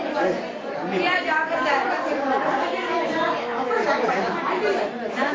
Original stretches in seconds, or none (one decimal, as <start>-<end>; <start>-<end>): 0.0-1.1; 4.3-5.3